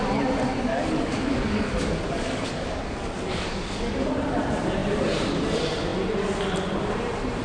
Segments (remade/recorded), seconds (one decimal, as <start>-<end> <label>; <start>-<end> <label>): 0.0-0.7 recorded; 0.7-4.1 remade; 4.1-7.4 recorded